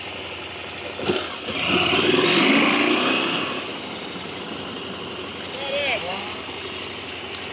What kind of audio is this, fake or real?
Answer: real